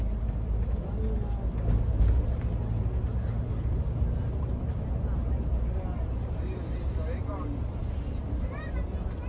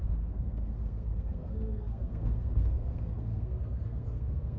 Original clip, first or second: first